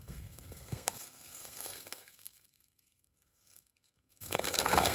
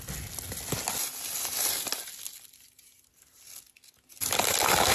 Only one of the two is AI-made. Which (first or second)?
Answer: first